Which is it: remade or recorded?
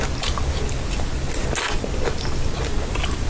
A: recorded